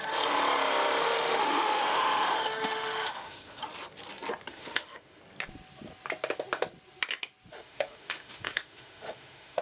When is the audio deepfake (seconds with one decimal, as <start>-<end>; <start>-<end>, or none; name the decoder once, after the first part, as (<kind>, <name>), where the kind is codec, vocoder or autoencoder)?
1.0-3.6 (autoencoder, DAC-VAE); 4.5-5.2; 7.5-9.6